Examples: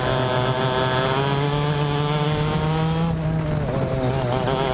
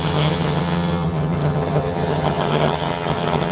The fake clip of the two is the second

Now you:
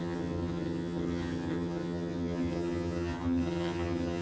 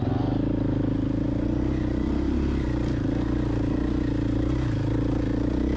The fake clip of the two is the first